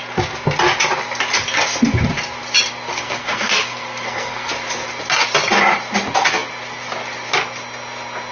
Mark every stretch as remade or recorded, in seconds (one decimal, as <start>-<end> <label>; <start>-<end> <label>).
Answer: 0.0-2.9 recorded; 2.9-4.5 remade; 4.5-8.3 recorded

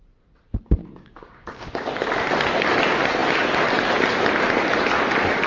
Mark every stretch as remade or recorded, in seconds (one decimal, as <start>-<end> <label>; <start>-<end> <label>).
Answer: 0.0-0.8 recorded; 0.8-1.9 remade; 1.9-5.5 recorded